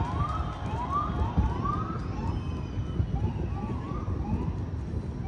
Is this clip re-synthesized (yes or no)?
no